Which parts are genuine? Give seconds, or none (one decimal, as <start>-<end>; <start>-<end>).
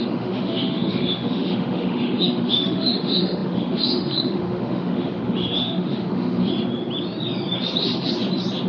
6.5-8.7